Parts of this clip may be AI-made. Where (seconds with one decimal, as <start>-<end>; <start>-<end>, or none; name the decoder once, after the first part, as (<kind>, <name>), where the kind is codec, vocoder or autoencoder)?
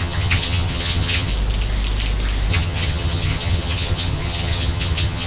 0.0-1.3 (vocoder, HiFi-GAN); 2.5-5.3